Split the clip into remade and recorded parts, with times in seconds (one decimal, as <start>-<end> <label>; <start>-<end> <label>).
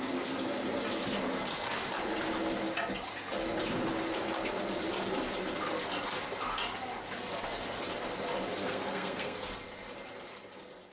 0.0-8.6 recorded; 8.6-9.5 remade; 9.5-10.9 recorded